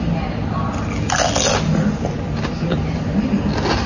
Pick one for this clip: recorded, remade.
recorded